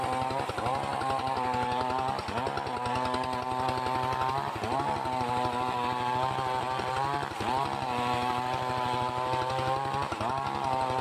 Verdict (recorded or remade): recorded